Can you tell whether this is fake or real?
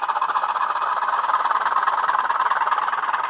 real